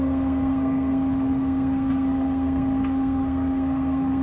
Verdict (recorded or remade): remade